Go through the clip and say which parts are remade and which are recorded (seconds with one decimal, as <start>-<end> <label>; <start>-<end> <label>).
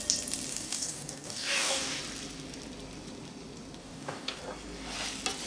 0.0-0.5 recorded; 0.5-2.0 remade; 2.0-3.8 recorded; 3.8-4.4 remade; 4.4-5.5 recorded